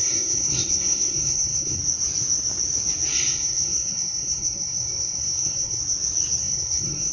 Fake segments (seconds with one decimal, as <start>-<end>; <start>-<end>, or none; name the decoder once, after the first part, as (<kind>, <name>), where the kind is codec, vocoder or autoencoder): 0.0-1.8 (codec, SNAC); 3.1-5.8; 6.4-7.1